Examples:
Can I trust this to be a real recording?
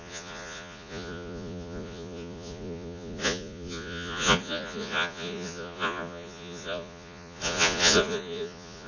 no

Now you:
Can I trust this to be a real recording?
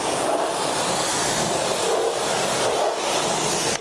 yes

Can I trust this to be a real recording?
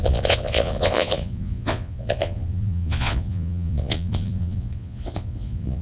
no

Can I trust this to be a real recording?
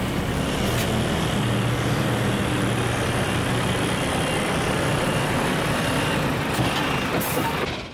yes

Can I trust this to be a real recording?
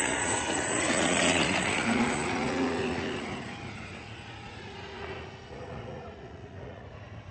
no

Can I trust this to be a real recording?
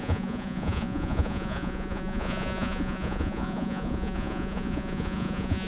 no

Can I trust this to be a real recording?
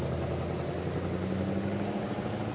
yes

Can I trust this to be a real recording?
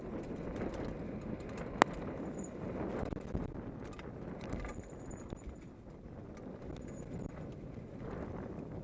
yes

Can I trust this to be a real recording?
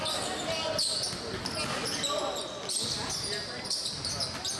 yes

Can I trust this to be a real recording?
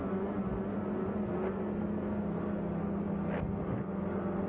yes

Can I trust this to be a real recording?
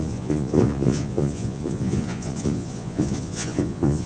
no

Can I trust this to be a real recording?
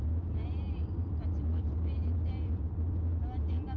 yes